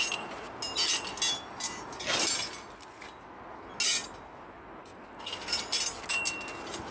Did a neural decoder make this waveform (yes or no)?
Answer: no